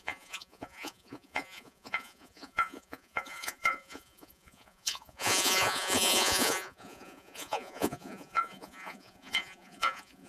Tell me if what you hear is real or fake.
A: fake